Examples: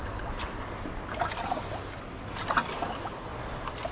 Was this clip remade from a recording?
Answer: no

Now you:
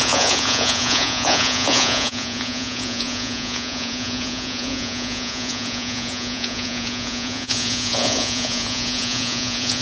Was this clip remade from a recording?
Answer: yes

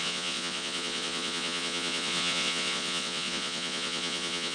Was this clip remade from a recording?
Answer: yes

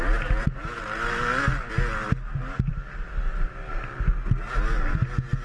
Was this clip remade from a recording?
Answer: no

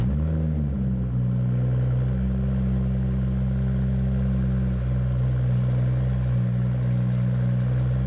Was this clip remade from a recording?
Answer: no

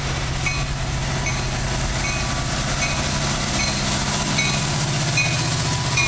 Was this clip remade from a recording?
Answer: no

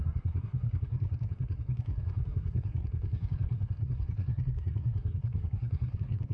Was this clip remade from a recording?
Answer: yes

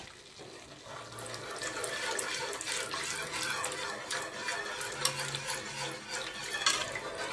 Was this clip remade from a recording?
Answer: no